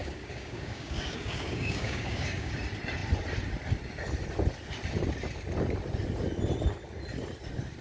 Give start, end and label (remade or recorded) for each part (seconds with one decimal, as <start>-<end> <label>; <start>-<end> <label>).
0.0-2.5 remade; 2.5-7.8 recorded